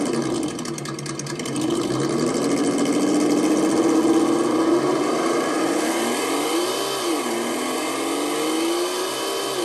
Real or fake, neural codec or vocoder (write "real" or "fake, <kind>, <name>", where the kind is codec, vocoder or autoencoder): real